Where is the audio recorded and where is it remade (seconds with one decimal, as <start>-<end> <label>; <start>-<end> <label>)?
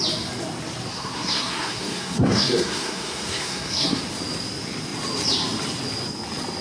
0.0-0.9 recorded; 0.9-4.0 remade; 4.0-6.6 recorded